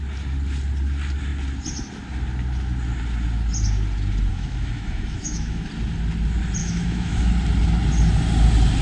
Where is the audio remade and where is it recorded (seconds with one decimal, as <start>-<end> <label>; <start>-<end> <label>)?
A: 0.0-4.3 recorded; 4.3-5.7 remade; 5.7-6.6 recorded; 6.6-7.3 remade; 7.3-8.8 recorded